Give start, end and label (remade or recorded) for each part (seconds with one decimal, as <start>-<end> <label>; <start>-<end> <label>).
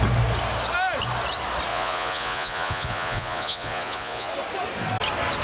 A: 0.0-1.7 recorded; 1.7-4.3 remade; 4.3-5.4 recorded